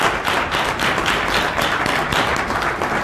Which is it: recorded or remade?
recorded